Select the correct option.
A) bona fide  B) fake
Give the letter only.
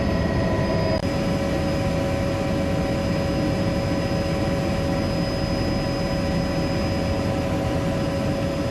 A